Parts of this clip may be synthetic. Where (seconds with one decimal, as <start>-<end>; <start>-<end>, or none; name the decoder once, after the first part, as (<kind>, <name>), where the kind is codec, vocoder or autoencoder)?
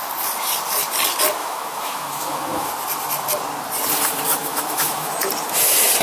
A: 1.4-2.7 (autoencoder, DAC-VAE); 4.4-5.1